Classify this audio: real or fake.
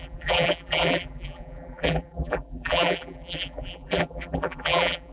fake